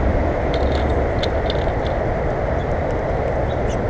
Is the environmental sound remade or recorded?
recorded